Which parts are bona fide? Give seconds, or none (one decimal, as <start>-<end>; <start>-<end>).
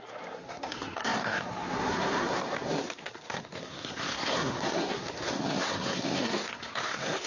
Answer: none